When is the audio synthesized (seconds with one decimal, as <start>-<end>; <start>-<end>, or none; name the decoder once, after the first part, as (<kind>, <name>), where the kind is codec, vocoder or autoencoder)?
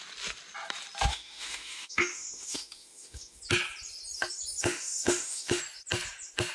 1.1-3.4 (autoencoder, DAC-VAE); 4.6-5.6